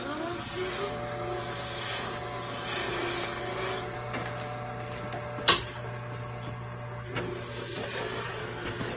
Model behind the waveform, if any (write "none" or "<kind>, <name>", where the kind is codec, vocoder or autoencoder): none